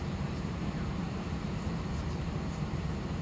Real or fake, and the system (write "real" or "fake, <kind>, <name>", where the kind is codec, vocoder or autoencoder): fake, vocoder, BigVGAN v2